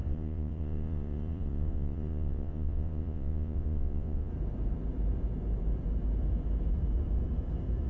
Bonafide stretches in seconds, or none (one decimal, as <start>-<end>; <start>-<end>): 4.3-7.9